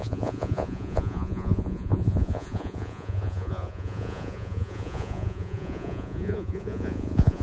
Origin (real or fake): fake